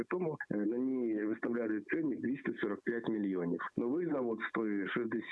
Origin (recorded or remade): recorded